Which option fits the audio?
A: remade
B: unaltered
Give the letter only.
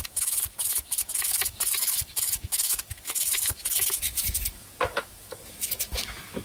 A